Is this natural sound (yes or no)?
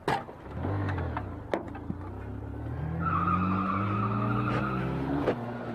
yes